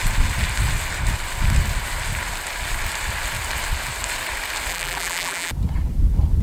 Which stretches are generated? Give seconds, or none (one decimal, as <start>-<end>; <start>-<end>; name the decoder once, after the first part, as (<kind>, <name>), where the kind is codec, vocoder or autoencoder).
4.7-5.5 (vocoder, BigVGAN v2)